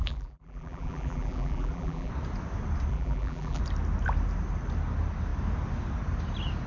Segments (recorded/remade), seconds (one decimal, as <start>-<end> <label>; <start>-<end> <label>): 0.0-2.1 remade; 2.1-2.9 recorded; 2.9-3.6 remade; 3.6-6.7 recorded